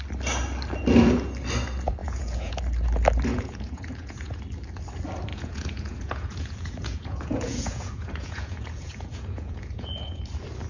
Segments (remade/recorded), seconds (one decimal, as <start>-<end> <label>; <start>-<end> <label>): 0.0-2.0 recorded; 2.0-2.6 remade; 2.6-3.3 recorded; 3.3-4.4 remade; 4.4-5.3 recorded; 5.3-10.2 remade; 10.2-10.7 recorded